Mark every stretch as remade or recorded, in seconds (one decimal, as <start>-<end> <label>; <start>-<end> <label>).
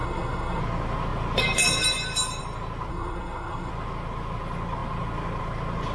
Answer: 0.0-0.6 remade; 0.6-2.9 recorded; 2.9-3.7 remade; 3.7-5.9 recorded